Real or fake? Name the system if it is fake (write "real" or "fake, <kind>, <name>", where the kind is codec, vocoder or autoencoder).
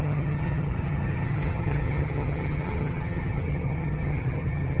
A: fake, vocoder, HiFi-GAN